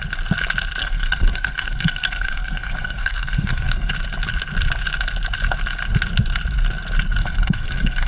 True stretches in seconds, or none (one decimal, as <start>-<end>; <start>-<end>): 0.0-0.8; 3.9-7.2